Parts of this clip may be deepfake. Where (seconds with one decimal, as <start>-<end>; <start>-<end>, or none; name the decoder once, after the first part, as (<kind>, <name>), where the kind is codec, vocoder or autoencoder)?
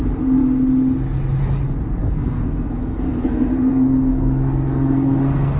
2.0-5.6 (codec, SNAC)